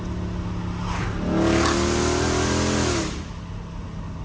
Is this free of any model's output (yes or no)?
yes